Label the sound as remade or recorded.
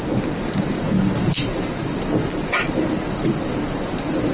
remade